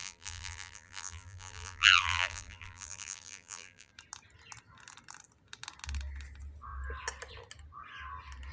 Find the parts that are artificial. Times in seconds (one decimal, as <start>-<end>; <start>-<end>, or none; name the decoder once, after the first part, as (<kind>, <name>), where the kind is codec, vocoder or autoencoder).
0.0-3.9 (vocoder, BigVGAN v2)